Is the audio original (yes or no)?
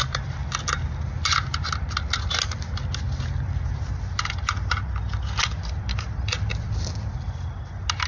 yes